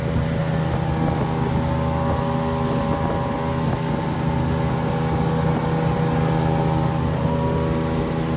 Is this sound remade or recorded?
recorded